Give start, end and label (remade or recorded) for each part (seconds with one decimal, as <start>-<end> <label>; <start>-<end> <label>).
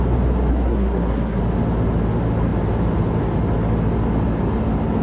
0.0-0.5 recorded; 0.5-1.4 remade; 1.4-5.0 recorded